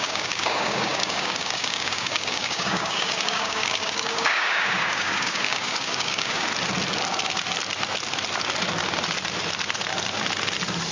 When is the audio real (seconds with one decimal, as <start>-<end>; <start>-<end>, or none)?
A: 6.5-10.9